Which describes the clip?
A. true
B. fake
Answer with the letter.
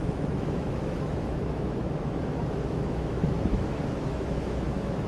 B